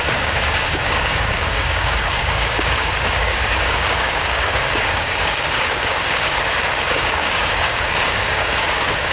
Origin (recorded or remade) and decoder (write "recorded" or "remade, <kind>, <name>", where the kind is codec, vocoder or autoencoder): remade, codec, DAC